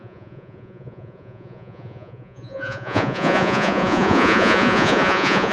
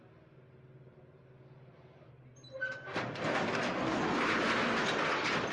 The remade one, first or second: first